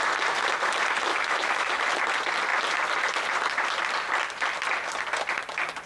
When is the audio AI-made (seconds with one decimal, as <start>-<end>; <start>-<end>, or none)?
1.1-1.8